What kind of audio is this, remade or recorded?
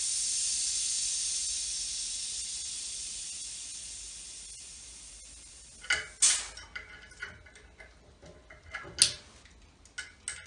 recorded